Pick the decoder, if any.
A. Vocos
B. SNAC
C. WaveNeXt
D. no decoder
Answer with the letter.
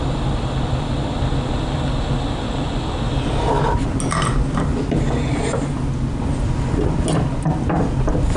D